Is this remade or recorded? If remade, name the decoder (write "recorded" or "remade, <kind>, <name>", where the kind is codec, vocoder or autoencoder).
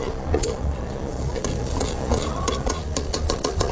remade, vocoder, Vocos